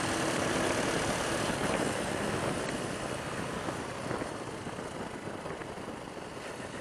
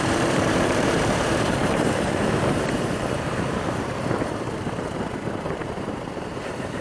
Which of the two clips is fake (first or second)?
second